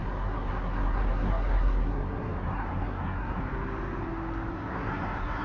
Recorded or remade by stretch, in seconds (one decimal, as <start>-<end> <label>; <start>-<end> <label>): 0.0-3.4 remade; 3.4-4.5 recorded; 4.5-5.4 remade